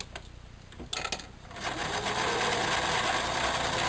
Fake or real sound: real